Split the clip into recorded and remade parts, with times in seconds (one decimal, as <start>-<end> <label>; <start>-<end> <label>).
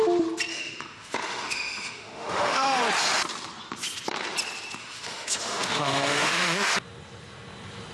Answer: 0.0-0.5 recorded; 0.5-2.8 remade; 2.8-4.8 recorded; 4.8-6.7 remade; 6.7-7.9 recorded